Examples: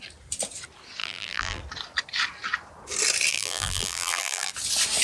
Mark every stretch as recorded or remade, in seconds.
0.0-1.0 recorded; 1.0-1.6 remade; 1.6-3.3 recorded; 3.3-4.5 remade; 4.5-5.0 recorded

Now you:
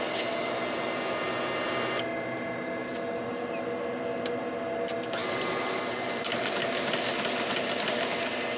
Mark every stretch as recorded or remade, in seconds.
0.0-5.2 recorded; 5.2-6.4 remade; 6.4-8.6 recorded

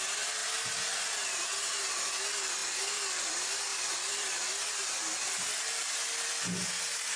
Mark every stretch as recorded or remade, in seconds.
0.0-3.7 recorded; 3.7-6.3 remade; 6.3-7.2 recorded

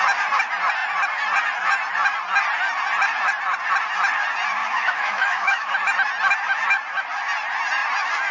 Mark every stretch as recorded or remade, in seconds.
0.0-4.6 recorded; 4.6-5.7 remade; 5.7-8.3 recorded